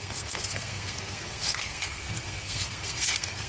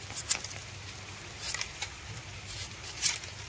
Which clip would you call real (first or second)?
second